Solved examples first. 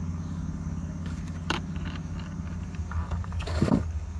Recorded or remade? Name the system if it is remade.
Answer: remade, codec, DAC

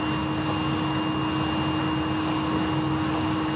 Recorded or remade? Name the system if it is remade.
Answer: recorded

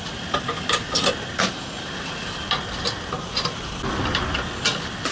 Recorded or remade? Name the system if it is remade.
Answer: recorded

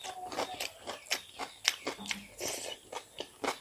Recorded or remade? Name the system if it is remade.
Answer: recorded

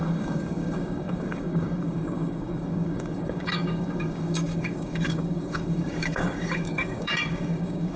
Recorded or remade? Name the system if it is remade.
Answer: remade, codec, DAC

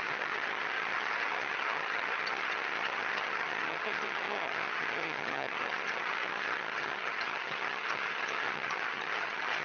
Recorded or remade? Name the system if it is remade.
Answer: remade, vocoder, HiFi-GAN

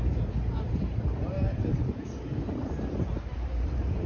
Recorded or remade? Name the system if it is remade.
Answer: remade, vocoder, BigVGAN v2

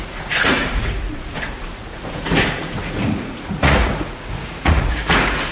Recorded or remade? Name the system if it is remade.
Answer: remade, vocoder, Vocos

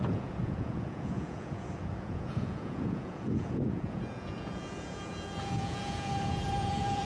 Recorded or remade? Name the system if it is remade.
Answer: remade, vocoder, Vocos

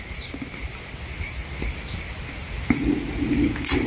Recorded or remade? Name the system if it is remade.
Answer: recorded